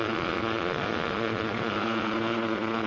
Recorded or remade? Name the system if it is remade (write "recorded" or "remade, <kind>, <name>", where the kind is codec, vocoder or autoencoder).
remade, vocoder, Vocos